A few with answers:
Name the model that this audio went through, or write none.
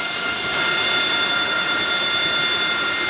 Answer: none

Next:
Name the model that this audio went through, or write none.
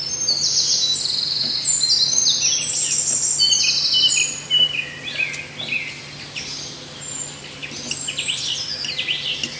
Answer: none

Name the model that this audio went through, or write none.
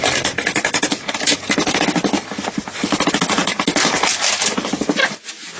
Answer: none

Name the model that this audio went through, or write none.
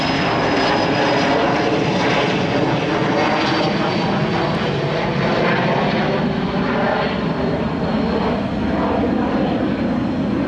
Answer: none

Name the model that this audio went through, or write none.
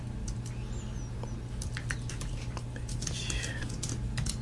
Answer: none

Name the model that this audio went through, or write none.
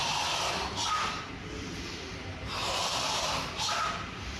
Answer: vocoder, BigVGAN v2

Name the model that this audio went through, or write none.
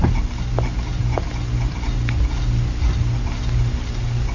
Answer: none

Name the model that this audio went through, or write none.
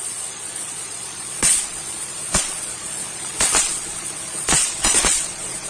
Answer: vocoder, Vocos